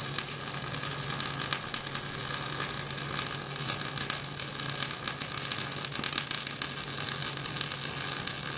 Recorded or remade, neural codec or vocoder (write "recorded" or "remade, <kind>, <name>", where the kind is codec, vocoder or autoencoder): recorded